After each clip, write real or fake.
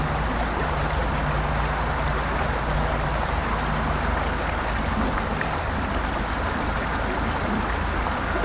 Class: real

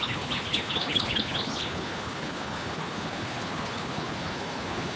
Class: fake